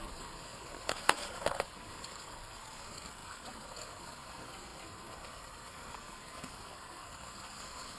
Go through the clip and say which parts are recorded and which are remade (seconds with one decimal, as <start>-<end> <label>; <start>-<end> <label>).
0.0-8.0 remade